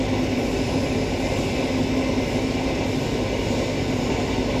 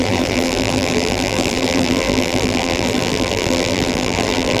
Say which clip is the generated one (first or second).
second